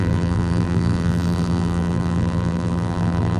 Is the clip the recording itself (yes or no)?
no